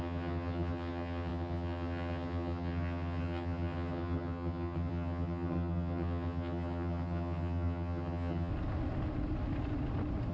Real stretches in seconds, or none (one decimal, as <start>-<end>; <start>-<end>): 8.5-10.3